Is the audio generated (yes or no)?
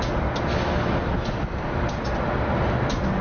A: no